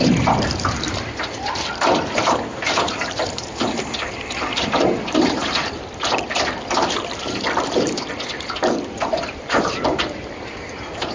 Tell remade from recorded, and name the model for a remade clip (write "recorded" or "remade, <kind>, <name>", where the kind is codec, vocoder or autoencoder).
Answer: remade, vocoder, BigVGAN v2